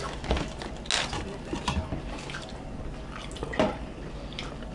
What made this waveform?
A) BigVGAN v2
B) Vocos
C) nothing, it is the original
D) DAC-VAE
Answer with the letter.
C